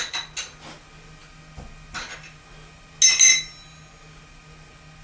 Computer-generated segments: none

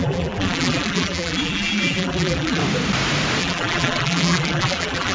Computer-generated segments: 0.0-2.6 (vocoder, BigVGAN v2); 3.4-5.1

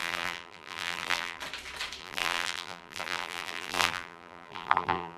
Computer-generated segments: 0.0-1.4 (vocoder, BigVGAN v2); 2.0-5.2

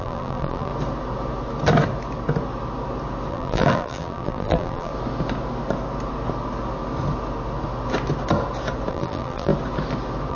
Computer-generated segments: 0.0-0.7 (vocoder, BigVGAN v2); 3.3-4.9; 8.9-9.5